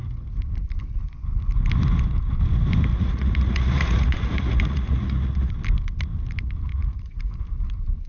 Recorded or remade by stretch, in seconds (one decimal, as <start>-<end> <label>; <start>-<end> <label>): 0.0-2.9 recorded; 2.9-5.5 remade; 5.5-6.7 recorded; 6.7-7.4 remade; 7.4-8.1 recorded

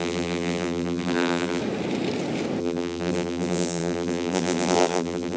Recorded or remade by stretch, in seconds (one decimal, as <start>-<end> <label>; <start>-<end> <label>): 0.0-1.6 remade; 1.6-2.6 recorded; 2.6-5.4 remade

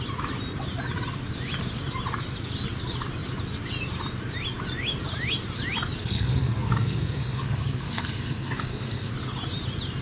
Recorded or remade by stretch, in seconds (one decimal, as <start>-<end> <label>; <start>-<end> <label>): 0.0-6.0 recorded; 6.0-9.1 remade; 9.1-10.0 recorded